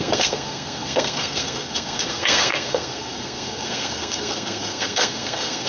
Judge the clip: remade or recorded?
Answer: remade